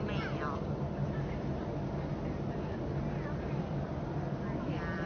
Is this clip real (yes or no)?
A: no